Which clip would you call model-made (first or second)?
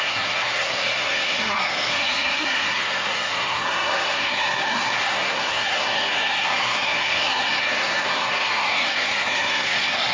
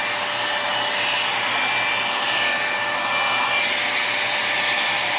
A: first